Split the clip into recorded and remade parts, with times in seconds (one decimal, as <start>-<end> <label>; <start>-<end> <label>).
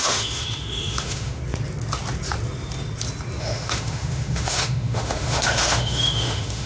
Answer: 0.0-1.4 remade; 1.4-3.4 recorded; 3.4-6.7 remade